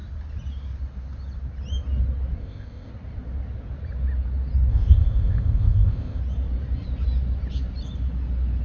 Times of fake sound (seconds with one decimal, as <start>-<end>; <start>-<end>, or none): 2.4-2.9; 4.7-6.2